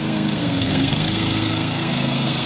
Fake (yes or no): yes